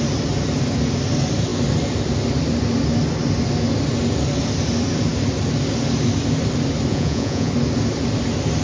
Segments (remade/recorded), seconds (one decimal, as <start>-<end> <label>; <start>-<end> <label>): 0.0-6.9 recorded; 6.9-7.5 remade; 7.5-8.6 recorded